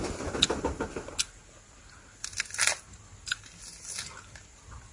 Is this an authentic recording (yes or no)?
yes